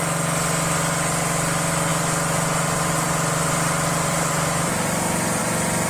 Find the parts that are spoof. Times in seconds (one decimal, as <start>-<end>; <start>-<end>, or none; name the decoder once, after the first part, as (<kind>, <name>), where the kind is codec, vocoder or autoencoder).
1.9-5.4 (vocoder, BigVGAN v2)